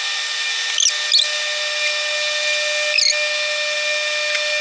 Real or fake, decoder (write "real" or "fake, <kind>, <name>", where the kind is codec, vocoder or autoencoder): real